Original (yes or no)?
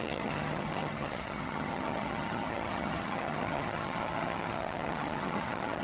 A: no